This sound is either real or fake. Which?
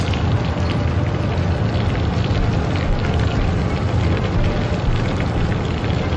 real